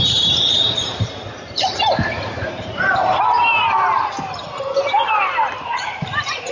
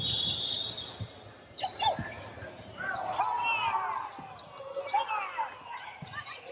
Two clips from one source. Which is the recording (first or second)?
second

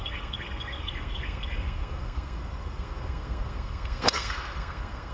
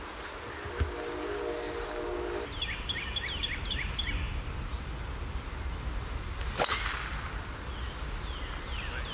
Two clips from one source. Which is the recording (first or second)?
second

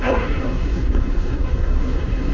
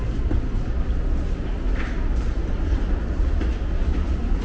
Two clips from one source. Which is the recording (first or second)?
second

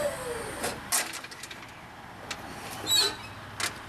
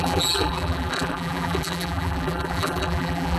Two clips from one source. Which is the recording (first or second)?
first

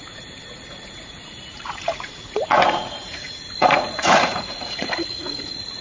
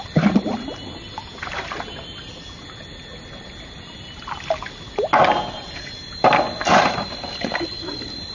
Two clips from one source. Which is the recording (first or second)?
second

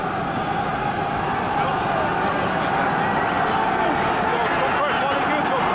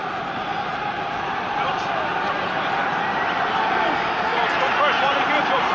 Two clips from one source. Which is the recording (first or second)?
first